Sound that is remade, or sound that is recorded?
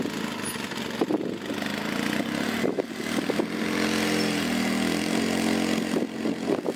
recorded